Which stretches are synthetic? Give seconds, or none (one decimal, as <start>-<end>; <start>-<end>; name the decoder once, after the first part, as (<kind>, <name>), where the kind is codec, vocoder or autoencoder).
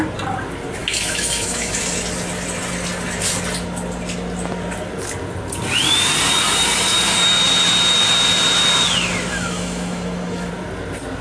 0.8-1.8 (autoencoder, DAC-VAE); 9.3-10.5